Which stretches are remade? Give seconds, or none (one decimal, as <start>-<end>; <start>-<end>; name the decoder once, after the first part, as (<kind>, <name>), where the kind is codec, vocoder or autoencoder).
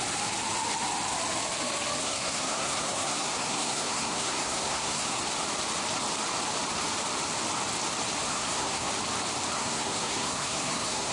2.0-5.2 (codec, SNAC); 8.3-8.9; 9.6-11.1